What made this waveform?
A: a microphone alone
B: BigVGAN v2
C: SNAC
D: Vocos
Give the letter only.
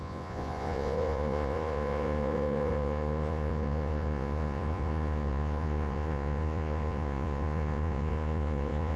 D